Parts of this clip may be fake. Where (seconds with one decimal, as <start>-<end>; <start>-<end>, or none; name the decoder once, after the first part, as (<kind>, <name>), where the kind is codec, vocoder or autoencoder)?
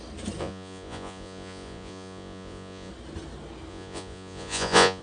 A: 0.4-2.9 (vocoder, Vocos); 3.7-5.0